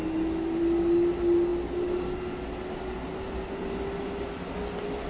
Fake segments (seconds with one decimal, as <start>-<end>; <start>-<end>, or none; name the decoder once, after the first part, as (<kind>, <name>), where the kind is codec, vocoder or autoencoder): none